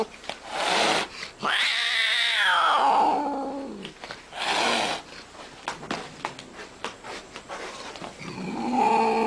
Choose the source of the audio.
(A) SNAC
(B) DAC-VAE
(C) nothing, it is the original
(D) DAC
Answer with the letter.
C